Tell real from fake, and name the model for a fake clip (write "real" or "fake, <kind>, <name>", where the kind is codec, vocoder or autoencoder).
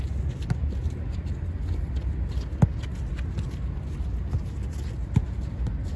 real